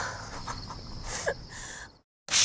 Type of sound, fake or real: real